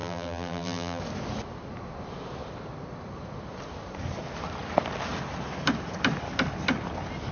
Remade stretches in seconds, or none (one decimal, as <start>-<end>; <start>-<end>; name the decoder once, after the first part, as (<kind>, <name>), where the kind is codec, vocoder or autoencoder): 0.0-1.0 (vocoder, BigVGAN v2)

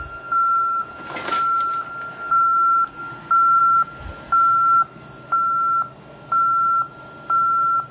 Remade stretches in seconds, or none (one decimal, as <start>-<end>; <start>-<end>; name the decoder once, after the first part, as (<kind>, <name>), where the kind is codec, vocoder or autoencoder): none

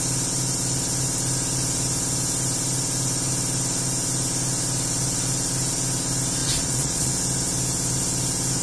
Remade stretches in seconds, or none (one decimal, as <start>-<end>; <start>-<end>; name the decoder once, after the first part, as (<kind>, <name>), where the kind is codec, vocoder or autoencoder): 6.4-7.1 (vocoder, Vocos)

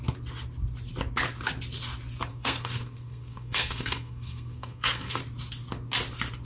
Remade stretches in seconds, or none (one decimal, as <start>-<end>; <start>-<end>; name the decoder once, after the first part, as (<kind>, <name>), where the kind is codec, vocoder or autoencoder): 2.3-5.2 (codec, SNAC)